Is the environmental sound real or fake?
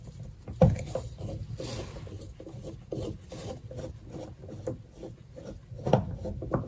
real